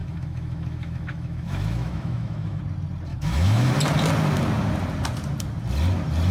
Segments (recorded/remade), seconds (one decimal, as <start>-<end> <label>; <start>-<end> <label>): 0.0-2.6 remade; 2.6-3.1 recorded; 3.1-3.7 remade; 3.7-6.3 recorded